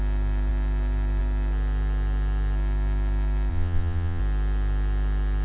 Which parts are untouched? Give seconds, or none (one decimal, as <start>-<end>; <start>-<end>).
0.0-3.5; 4.2-5.4